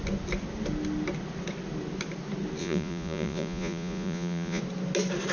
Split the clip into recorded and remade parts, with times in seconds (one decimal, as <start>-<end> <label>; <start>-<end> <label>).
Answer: 0.0-2.6 recorded; 2.6-4.6 remade; 4.6-5.3 recorded